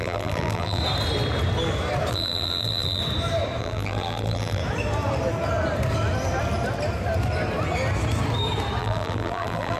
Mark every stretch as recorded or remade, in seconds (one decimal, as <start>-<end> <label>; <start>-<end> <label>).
0.0-0.8 remade; 0.8-2.1 recorded; 2.1-3.0 remade; 3.0-3.6 recorded; 3.6-4.6 remade; 4.6-8.8 recorded; 8.8-9.8 remade